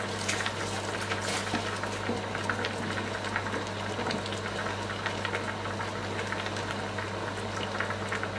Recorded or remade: recorded